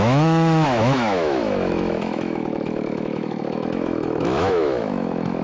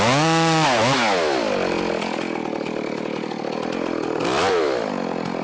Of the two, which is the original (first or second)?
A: second